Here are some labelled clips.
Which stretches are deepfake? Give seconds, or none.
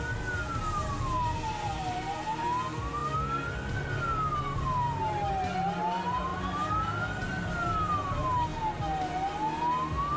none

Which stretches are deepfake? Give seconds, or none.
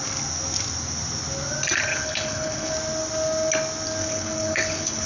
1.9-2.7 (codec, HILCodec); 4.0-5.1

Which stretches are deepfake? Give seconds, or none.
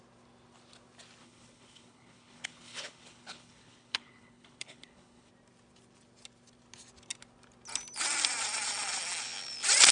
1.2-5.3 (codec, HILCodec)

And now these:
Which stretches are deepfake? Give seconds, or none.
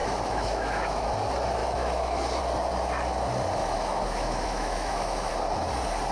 0.0-1.1 (autoencoder, DAC-VAE); 1.6-2.4; 3.6-5.3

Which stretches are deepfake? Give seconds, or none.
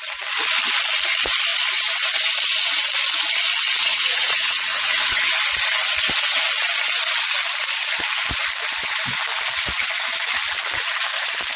3.8-5.3 (vocoder, WaveNeXt)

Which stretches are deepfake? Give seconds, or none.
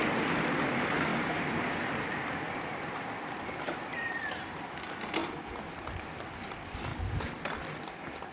1.1-4.4 (vocoder, BigVGAN v2); 5.2-6.1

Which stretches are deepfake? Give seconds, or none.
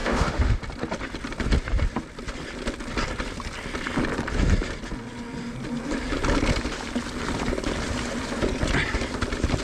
0.0-0.6 (autoencoder, DAC-VAE)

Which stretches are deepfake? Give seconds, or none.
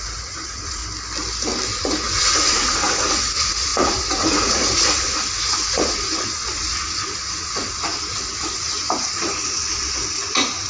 0.0-0.8 (vocoder, Vocos); 1.8-10.7